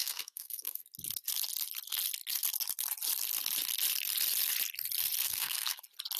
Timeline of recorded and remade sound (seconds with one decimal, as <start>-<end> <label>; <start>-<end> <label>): 0.0-0.8 remade; 0.8-5.2 recorded; 5.2-5.8 remade; 5.8-6.2 recorded